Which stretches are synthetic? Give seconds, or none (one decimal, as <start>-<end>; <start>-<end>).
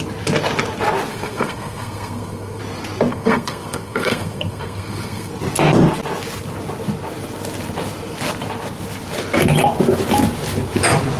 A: 1.1-2.6; 3.1-5.3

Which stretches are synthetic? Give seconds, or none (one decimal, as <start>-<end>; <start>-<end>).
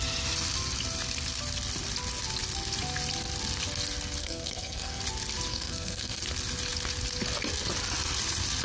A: 4.2-5.0; 5.5-6.2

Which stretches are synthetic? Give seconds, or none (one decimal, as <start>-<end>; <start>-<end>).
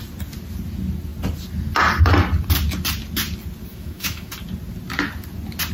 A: 3.7-4.3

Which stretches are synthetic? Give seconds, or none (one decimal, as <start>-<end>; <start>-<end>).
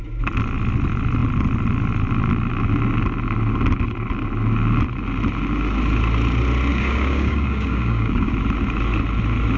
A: 6.7-8.3